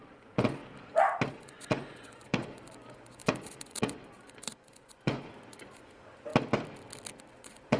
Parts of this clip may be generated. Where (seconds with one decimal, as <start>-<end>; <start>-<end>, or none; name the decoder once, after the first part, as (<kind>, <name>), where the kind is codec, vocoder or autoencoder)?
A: 0.0-0.6 (vocoder, Vocos); 1.3-6.3; 7.3-7.8